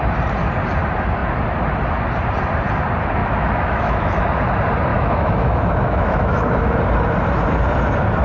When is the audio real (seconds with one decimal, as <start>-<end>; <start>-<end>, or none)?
0.0-3.2; 4.2-4.9; 6.8-8.2